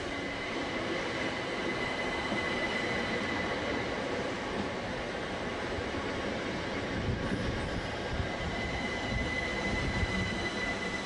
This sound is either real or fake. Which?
fake